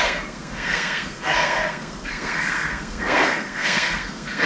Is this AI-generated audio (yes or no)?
yes